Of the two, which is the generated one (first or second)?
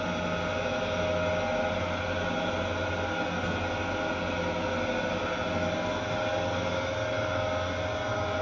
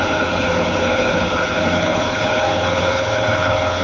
second